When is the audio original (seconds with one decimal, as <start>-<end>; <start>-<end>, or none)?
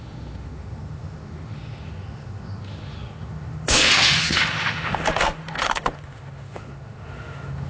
none